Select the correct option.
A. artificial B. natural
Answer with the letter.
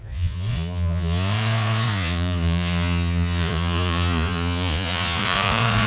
A